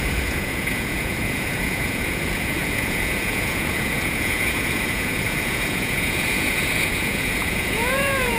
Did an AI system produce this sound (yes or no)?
yes